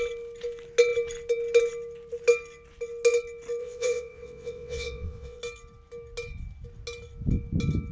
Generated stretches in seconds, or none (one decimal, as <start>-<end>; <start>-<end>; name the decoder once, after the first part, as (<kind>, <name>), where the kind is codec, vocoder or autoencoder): 3.6-5.4 (vocoder, WaveNeXt)